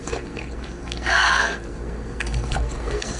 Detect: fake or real fake